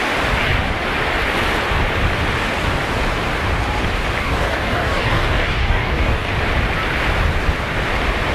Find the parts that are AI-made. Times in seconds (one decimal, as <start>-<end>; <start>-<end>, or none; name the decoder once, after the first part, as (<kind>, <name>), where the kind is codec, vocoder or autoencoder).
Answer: 4.2-6.3 (codec, DAC)

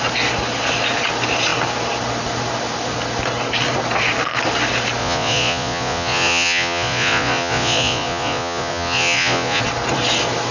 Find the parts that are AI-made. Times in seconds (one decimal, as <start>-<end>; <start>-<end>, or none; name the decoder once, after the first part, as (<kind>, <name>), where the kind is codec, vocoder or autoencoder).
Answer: 5.0-9.6 (vocoder, Vocos)

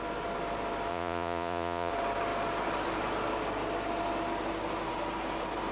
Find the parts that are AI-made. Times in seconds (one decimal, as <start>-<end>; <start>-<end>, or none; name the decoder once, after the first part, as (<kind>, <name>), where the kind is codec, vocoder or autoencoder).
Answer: 0.9-1.9 (vocoder, Vocos)

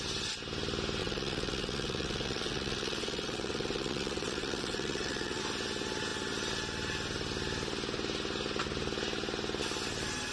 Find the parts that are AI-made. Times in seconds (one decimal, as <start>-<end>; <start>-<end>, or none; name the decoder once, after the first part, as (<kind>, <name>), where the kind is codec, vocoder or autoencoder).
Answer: 1.0-5.4 (vocoder, WaveNeXt)

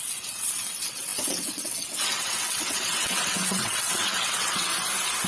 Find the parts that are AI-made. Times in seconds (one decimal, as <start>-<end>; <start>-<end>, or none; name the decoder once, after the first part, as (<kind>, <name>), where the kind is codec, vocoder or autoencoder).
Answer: 0.0-4.7 (vocoder, WaveNeXt)

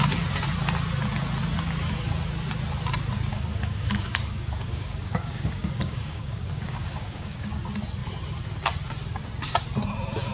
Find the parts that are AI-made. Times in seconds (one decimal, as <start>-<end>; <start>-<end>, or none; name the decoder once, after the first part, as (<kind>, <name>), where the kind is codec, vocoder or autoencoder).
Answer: 3.3-7.5 (codec, DAC)

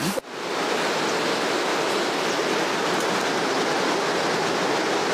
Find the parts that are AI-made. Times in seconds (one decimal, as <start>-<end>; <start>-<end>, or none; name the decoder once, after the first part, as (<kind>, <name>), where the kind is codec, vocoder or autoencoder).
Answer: none